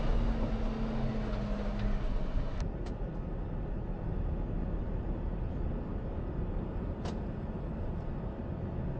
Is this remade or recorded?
recorded